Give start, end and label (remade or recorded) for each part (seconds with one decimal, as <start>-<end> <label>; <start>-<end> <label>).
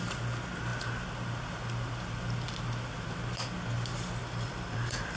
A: 0.0-4.2 recorded; 4.2-5.2 remade